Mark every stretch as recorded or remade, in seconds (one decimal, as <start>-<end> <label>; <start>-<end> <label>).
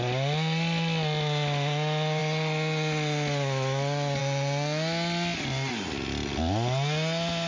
0.0-7.5 recorded